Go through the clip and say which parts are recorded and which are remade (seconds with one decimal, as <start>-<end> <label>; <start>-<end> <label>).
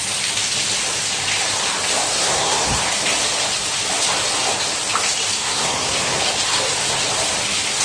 0.0-2.1 recorded; 2.1-2.8 remade; 2.8-5.4 recorded; 5.4-6.2 remade; 6.2-7.8 recorded